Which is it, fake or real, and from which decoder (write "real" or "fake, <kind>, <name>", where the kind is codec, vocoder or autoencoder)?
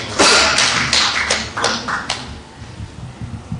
real